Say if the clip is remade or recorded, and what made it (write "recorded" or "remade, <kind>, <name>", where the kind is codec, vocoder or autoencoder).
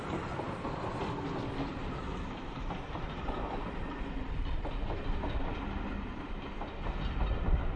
recorded